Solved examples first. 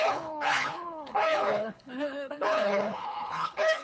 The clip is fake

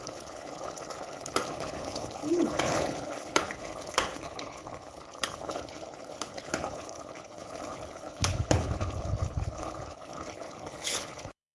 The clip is fake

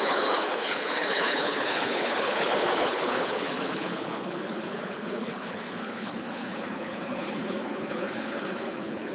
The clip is fake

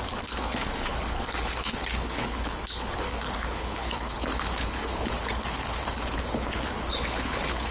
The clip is fake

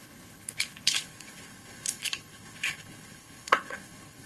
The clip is fake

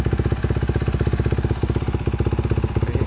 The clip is real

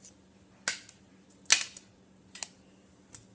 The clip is real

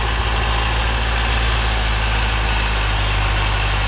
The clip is real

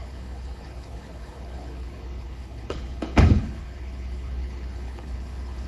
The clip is fake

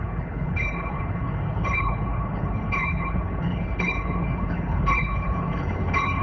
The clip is fake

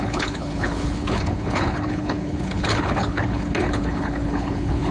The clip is fake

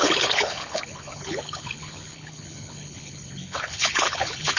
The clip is fake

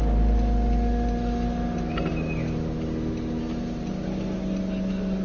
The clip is real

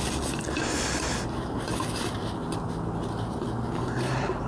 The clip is real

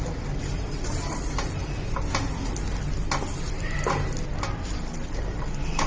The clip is real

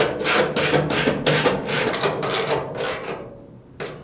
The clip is real